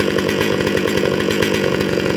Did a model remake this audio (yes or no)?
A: yes